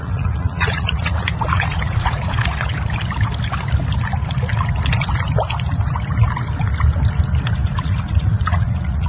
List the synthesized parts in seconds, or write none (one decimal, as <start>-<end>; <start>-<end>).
0.0-2.7; 7.8-9.1